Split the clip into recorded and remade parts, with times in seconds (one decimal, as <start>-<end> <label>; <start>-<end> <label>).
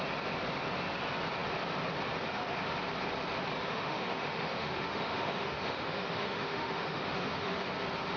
0.0-3.7 recorded; 3.7-7.7 remade; 7.7-8.2 recorded